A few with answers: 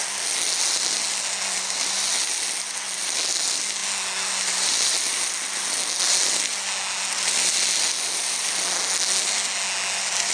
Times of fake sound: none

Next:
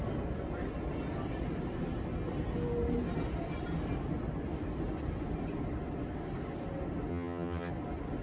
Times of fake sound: 7.1-7.7 (vocoder, HiFi-GAN)

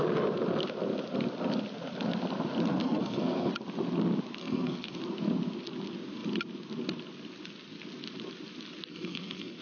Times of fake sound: 2.8-3.5 (codec, SNAC); 4.4-5.0; 8.9-9.6

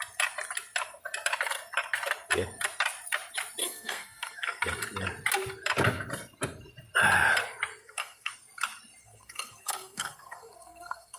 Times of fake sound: 3.6-4.6 (codec, SNAC); 7.8-8.3; 9.0-11.2

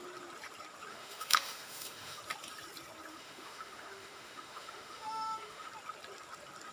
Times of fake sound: 0.9-2.2 (autoencoder, DAC-VAE); 3.1-5.7

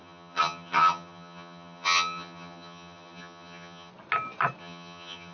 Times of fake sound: 0.0-3.9 (vocoder, HiFi-GAN); 4.6-5.3

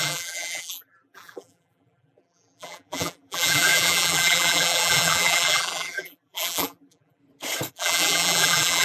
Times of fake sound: 0.0-7.2 (vocoder, BigVGAN v2); 7.7-8.8